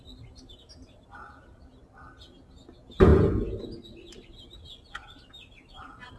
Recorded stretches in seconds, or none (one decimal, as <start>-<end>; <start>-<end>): 0.0-6.2

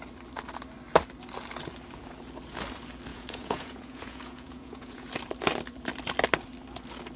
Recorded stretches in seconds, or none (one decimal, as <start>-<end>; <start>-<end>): 0.0-3.1; 5.1-7.2

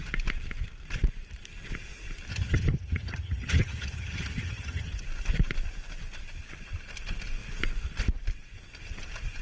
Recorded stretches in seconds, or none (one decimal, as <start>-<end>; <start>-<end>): 0.0-2.3; 4.9-9.4